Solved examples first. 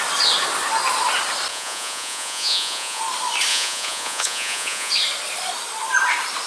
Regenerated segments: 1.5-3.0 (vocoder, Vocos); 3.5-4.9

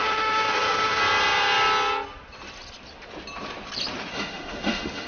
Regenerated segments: 0.0-1.0 (autoencoder, DAC-VAE); 4.1-5.1

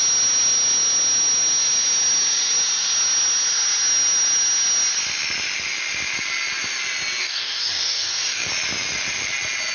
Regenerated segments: 7.2-8.5 (codec, DAC)

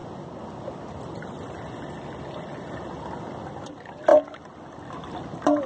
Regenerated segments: none

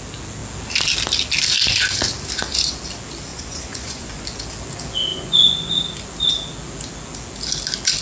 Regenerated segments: 3.3-4.2 (vocoder, Vocos); 5.1-5.7